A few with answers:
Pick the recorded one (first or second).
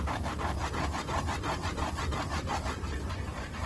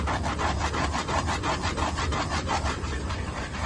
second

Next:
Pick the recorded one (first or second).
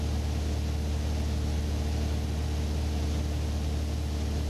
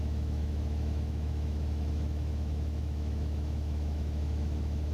first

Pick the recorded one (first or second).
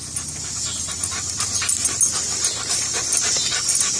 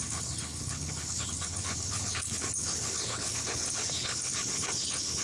first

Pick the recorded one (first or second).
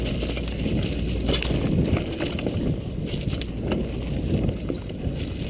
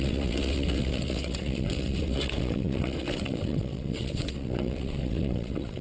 first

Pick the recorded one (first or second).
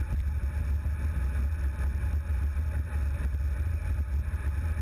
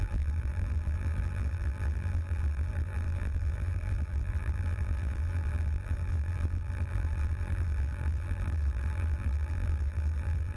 first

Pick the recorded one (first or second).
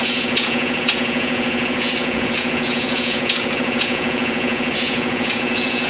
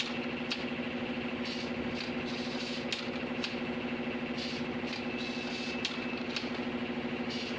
second